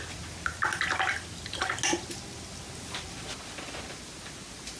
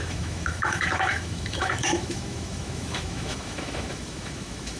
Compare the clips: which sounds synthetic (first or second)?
second